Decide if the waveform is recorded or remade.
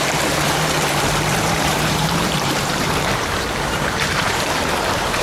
remade